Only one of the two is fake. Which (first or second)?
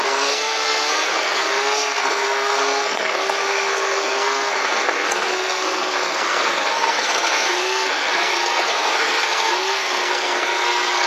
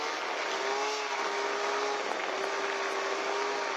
first